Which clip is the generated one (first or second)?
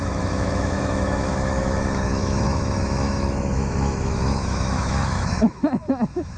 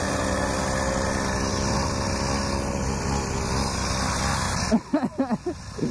first